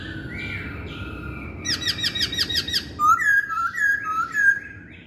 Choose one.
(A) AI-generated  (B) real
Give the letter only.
B